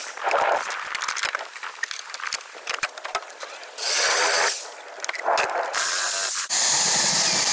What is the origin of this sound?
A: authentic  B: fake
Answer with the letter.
A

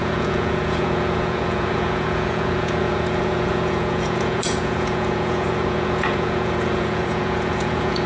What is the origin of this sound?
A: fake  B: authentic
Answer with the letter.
A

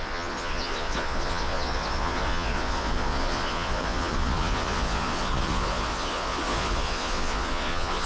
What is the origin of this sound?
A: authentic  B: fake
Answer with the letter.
B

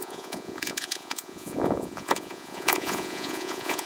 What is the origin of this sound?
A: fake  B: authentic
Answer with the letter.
A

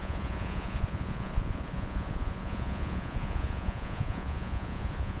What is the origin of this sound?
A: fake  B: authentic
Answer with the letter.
A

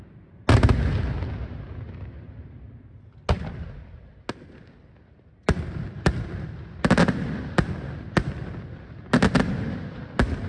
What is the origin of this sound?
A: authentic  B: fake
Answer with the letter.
A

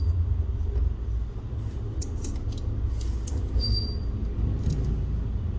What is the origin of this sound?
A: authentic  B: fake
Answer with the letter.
A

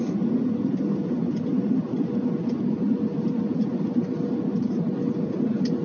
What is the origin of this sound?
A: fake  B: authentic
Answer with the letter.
B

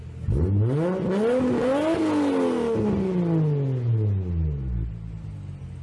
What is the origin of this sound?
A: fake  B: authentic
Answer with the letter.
B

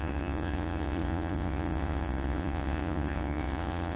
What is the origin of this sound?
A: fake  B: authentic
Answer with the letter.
A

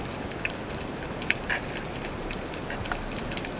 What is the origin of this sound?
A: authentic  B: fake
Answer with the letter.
A